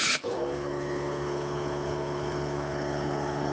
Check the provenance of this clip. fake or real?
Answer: fake